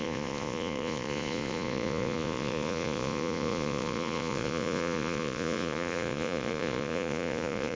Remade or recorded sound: remade